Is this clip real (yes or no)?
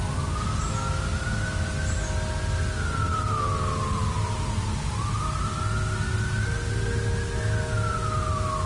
yes